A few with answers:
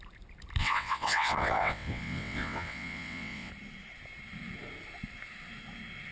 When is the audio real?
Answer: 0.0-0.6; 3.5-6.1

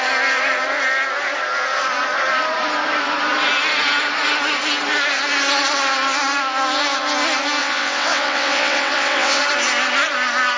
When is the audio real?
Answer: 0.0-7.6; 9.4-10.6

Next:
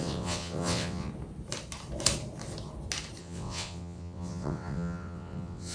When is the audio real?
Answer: 1.1-3.2

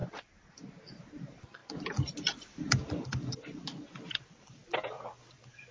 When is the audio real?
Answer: 0.0-5.7

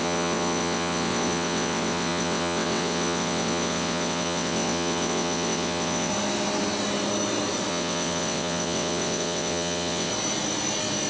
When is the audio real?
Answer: 6.1-7.7; 10.1-11.1

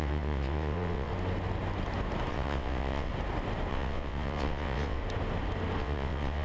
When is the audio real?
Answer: 1.1-2.3; 3.1-3.7; 5.0-5.8

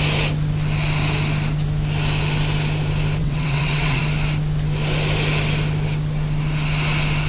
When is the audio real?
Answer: 0.0-3.2; 4.0-7.3

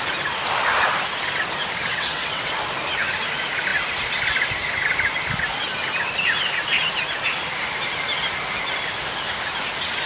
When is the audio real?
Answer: 0.0-1.9; 2.5-10.1